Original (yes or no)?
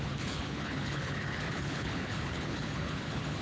no